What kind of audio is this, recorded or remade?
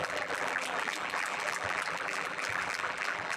remade